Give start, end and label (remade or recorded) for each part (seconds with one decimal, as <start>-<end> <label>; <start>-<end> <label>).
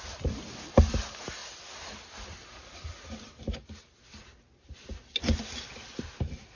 0.0-6.6 recorded